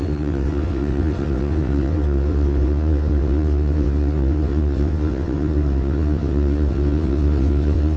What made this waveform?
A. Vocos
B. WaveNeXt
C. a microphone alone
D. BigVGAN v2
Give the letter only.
B